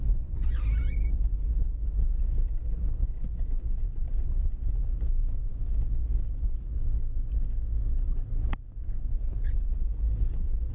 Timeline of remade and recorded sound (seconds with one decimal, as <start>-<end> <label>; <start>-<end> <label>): 0.0-5.5 remade; 5.5-8.0 recorded; 8.0-10.7 remade